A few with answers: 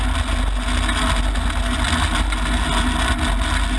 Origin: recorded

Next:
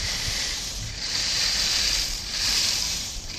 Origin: remade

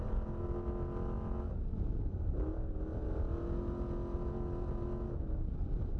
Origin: recorded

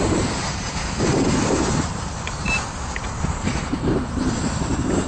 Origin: remade